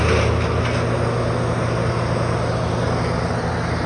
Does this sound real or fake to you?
real